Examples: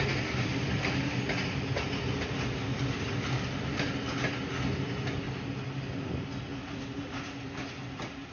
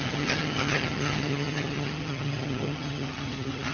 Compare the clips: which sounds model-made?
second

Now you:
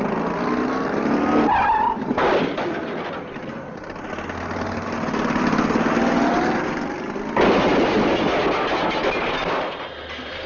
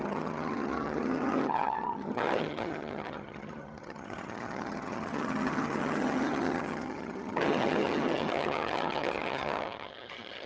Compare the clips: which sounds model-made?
second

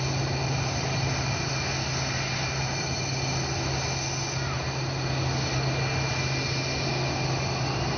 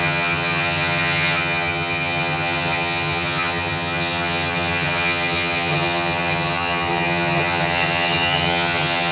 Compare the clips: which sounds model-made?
second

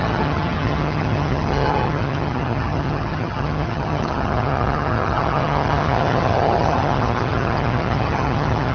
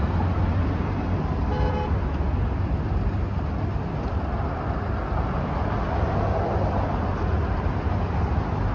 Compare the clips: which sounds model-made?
first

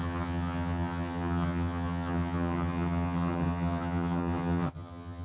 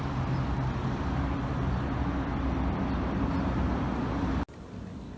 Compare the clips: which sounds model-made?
first